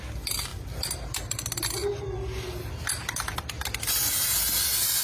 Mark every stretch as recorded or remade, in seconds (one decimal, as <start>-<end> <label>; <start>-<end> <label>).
0.0-5.0 recorded